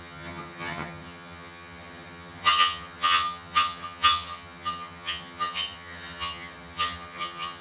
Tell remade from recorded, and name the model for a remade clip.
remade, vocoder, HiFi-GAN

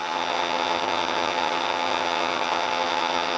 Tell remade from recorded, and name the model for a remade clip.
remade, vocoder, HiFi-GAN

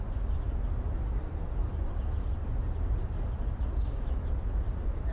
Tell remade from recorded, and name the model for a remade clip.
recorded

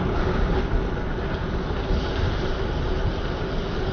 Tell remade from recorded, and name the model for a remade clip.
recorded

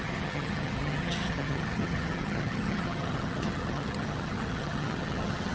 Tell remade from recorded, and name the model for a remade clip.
remade, vocoder, HiFi-GAN